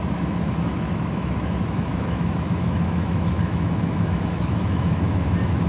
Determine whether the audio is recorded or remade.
remade